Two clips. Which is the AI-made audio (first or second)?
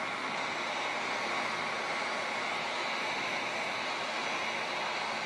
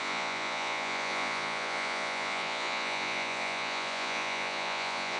second